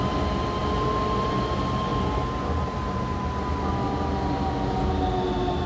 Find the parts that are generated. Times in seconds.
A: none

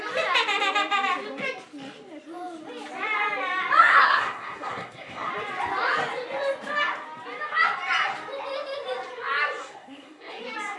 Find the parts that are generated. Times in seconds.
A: 3.9-5.3 (codec, SNAC); 9.6-10.4